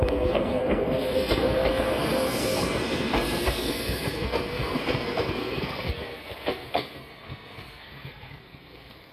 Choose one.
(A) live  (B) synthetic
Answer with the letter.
B